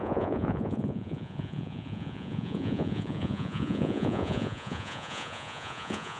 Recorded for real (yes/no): no